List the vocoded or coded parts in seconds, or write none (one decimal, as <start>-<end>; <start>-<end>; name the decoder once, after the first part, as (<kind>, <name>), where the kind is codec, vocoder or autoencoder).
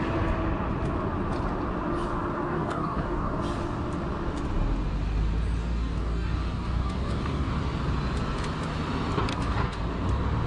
2.5-3.4 (codec, DAC); 5.6-7.5; 9.3-9.9